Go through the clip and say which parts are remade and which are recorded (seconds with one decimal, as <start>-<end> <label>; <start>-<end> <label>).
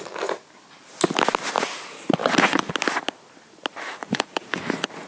0.0-2.2 recorded; 2.2-2.7 remade; 2.7-4.0 recorded; 4.0-5.1 remade